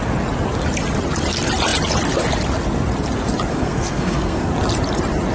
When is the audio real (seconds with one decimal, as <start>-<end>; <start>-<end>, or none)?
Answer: 0.0-3.5; 4.5-5.3

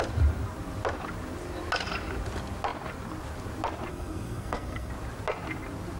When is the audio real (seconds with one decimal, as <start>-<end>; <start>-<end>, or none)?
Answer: 0.0-3.9; 4.9-6.0

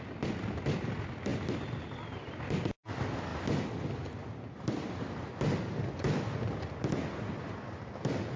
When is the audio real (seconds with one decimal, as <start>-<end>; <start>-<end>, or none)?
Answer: 0.0-8.4

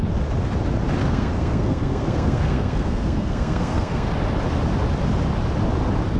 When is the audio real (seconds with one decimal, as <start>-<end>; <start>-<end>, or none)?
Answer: 0.0-1.0; 4.1-6.2

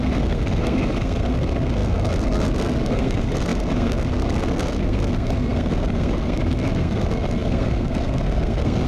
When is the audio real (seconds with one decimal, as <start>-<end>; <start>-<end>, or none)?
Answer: none

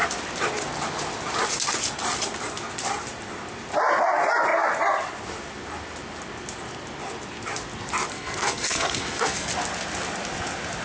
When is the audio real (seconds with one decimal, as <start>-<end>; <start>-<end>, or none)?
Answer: 0.0-8.1; 9.5-10.8